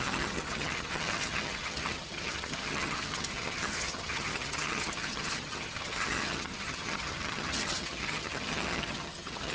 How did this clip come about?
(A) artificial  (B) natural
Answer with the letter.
A